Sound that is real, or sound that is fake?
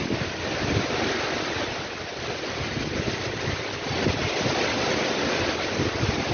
real